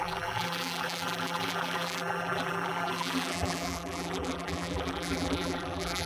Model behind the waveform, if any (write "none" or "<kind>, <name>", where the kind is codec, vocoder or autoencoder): vocoder, BigVGAN v2